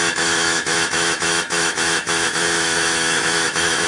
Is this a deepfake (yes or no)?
yes